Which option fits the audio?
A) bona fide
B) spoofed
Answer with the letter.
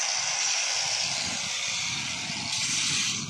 A